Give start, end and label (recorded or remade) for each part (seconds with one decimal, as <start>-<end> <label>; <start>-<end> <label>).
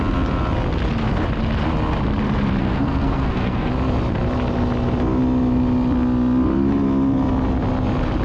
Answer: 0.0-2.6 recorded; 2.6-3.7 remade; 3.7-8.2 recorded